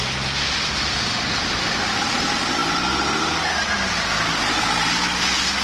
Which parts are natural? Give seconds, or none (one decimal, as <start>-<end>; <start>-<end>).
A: 0.0-5.6